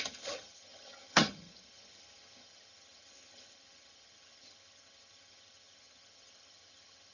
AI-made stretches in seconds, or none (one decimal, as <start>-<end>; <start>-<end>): 0.0-7.1